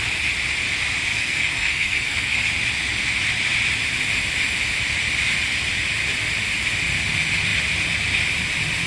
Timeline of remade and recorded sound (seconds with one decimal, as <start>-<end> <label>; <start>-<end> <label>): 0.0-1.1 recorded; 1.1-2.5 remade; 2.5-8.9 recorded